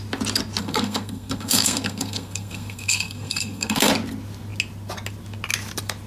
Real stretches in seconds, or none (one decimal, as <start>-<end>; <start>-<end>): 0.0-0.6; 3.9-6.1